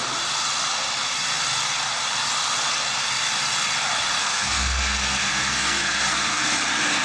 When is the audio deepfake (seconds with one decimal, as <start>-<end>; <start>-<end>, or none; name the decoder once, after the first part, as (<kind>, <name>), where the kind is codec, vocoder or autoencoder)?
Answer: 4.2-6.5 (codec, SNAC)